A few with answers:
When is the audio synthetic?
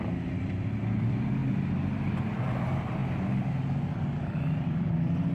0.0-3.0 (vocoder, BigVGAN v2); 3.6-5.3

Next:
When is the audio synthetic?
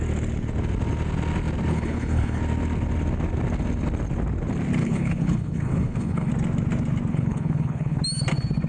1.7-2.4 (codec, HILCodec); 4.8-6.3; 7.1-8.0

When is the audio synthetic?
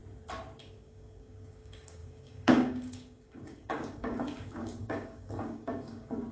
0.6-6.3 (codec, DAC)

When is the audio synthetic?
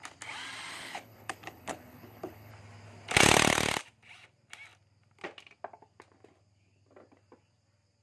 0.7-2.5 (codec, HILCodec)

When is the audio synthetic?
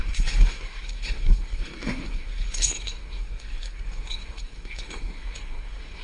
0.0-6.0 (codec, SNAC)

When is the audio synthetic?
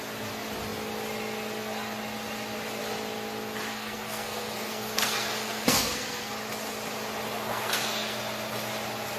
3.7-6.3 (codec, SNAC); 7.5-8.2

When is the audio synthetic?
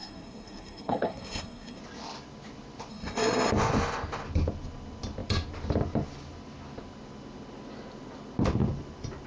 0.0-1.8 (codec, SNAC); 2.9-3.5